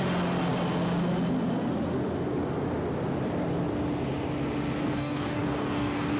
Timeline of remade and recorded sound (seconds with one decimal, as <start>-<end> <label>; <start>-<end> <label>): 0.0-4.8 recorded; 4.8-6.2 remade